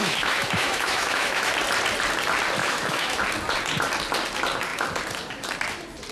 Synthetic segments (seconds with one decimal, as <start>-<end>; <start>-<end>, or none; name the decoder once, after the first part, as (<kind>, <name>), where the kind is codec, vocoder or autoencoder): 0.0-1.5 (autoencoder, DAC-VAE); 2.6-3.2